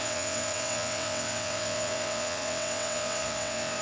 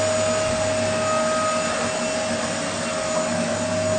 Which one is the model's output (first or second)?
first